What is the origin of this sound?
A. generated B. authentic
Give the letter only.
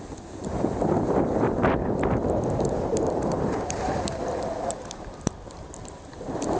B